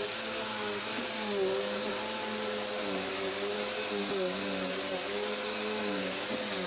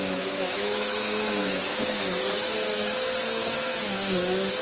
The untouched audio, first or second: first